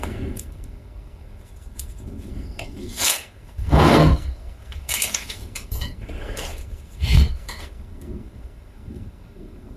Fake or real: fake